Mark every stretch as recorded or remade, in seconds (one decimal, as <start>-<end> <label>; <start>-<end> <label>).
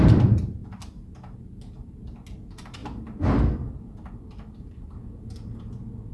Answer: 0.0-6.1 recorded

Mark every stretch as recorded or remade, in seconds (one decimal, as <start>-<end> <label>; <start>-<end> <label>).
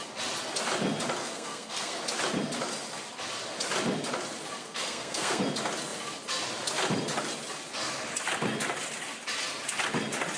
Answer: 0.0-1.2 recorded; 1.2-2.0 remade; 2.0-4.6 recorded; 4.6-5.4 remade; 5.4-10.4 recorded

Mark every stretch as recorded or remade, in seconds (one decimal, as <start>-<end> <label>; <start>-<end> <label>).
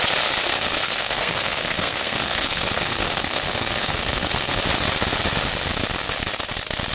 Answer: 0.0-0.5 recorded; 0.5-4.6 remade; 4.6-6.9 recorded